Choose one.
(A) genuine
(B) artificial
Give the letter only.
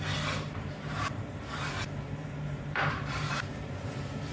B